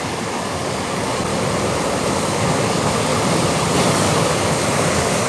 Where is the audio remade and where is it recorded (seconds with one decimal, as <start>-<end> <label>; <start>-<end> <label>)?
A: 0.0-1.3 remade; 1.3-2.1 recorded; 2.1-3.1 remade; 3.1-3.9 recorded; 3.9-5.3 remade